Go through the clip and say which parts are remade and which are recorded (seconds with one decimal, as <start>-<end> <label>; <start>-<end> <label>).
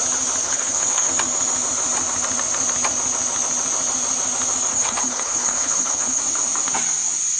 0.0-0.4 recorded; 0.4-1.1 remade; 1.1-4.7 recorded; 4.7-6.2 remade; 6.2-7.4 recorded